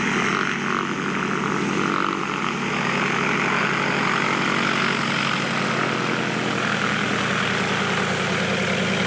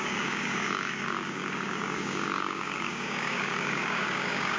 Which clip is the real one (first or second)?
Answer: first